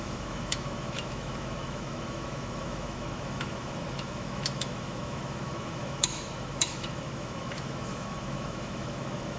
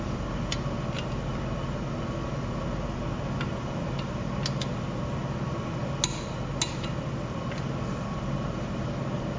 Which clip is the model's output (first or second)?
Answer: first